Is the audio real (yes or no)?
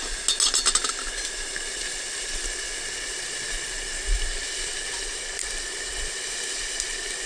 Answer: yes